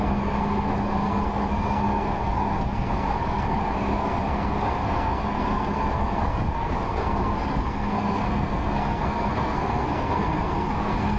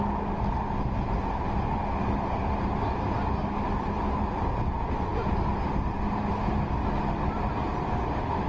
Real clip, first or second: second